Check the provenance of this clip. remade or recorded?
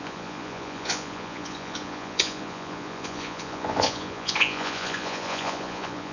remade